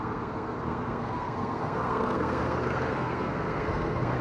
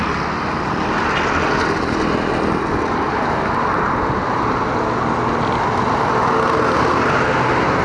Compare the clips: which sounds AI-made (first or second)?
first